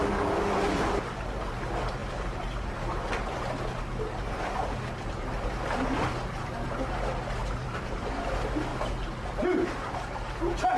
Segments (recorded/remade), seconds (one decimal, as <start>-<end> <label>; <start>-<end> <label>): 0.0-2.0 recorded; 2.0-2.7 remade; 2.7-7.4 recorded; 7.4-8.1 remade; 8.1-8.7 recorded; 8.7-10.4 remade; 10.4-10.8 recorded